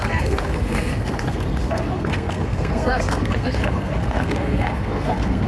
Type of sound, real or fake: fake